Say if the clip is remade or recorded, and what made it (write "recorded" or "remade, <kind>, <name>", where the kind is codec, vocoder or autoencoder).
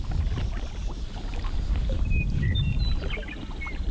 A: recorded